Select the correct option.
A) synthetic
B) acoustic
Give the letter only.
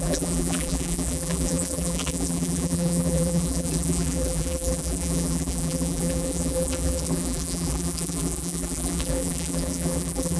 A